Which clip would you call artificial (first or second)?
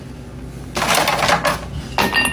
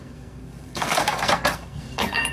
second